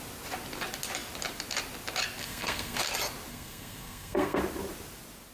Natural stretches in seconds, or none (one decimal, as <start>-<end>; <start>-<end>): 0.0-2.2; 2.8-3.3; 4.4-5.3